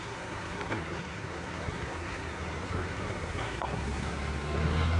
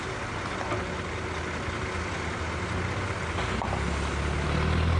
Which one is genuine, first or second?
second